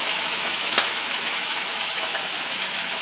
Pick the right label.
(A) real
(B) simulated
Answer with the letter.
B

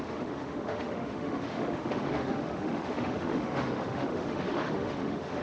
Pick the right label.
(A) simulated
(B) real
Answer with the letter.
A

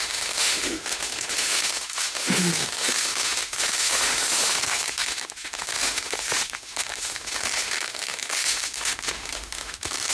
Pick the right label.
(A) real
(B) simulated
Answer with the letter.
B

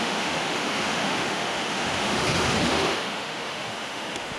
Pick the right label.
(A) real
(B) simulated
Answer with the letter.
B